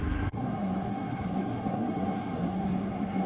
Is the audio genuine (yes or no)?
no